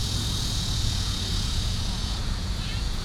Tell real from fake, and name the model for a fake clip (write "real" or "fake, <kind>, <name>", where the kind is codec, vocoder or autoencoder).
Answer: fake, vocoder, Vocos